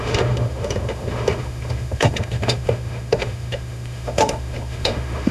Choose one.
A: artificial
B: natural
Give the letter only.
A